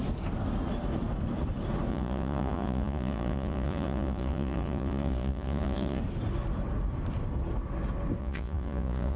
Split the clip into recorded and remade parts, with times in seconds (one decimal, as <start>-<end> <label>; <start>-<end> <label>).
0.0-1.9 recorded; 1.9-6.0 remade; 6.0-8.2 recorded; 8.2-9.2 remade